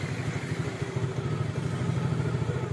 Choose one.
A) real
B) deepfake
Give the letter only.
A